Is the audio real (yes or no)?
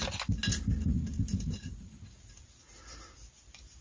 yes